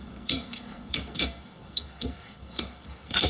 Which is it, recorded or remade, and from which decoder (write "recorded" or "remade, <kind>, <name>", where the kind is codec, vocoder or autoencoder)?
remade, codec, SNAC